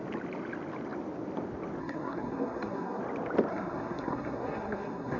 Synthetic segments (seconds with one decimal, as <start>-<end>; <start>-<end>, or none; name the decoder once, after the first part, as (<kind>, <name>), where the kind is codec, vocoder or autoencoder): 1.8-3.0 (codec, SNAC); 3.5-5.2